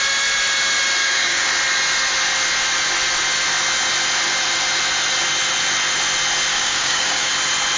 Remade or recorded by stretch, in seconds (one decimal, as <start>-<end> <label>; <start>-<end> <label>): 0.0-1.0 recorded; 1.0-1.5 remade; 1.5-6.5 recorded; 6.5-7.3 remade; 7.3-7.8 recorded